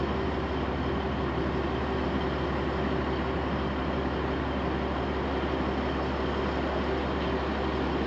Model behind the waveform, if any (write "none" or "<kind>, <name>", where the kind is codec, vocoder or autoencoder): none